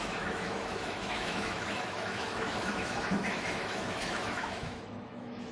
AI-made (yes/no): yes